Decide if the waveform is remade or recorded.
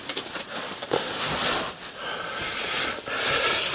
recorded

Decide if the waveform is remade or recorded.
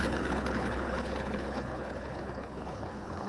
remade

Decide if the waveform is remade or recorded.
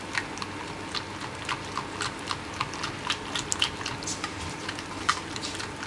recorded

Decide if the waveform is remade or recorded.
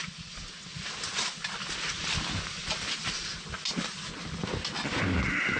recorded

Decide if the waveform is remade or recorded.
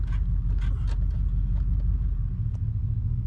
recorded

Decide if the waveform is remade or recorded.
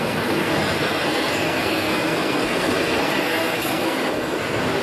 remade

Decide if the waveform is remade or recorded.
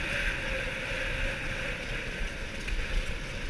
remade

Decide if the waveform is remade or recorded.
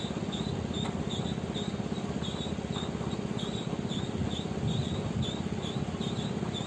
recorded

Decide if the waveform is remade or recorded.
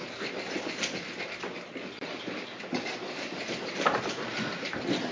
recorded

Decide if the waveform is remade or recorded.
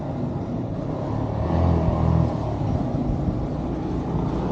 recorded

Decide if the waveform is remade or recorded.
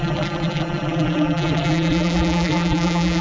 remade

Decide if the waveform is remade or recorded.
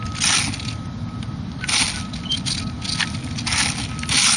recorded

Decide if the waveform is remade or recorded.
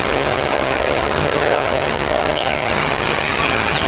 remade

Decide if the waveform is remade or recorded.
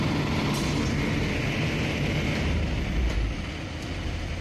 recorded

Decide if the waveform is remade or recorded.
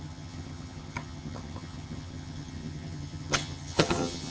remade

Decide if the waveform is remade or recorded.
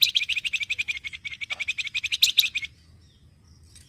recorded